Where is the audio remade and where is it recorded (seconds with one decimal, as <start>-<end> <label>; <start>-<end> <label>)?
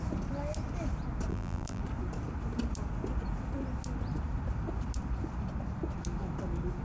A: 0.0-1.3 recorded; 1.3-1.8 remade; 1.8-6.8 recorded